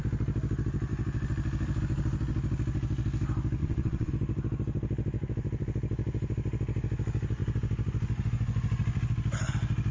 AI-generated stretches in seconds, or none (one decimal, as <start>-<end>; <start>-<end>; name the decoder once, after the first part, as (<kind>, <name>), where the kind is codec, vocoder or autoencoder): 3.6-4.1 (vocoder, WaveNeXt)